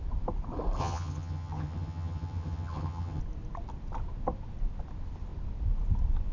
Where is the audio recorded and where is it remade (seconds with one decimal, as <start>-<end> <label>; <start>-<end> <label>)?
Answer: 0.0-0.8 recorded; 0.8-3.2 remade; 3.2-6.3 recorded